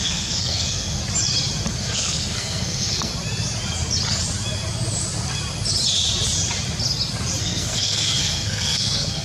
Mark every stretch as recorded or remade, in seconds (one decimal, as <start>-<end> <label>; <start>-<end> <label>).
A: 0.0-1.0 remade; 1.0-1.7 recorded; 1.7-3.1 remade; 3.1-7.4 recorded; 7.4-9.2 remade